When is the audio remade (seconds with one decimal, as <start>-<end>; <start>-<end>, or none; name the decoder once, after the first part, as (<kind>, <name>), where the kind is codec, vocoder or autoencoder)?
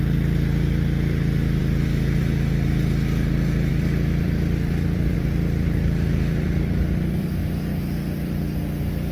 3.7-7.4 (vocoder, BigVGAN v2)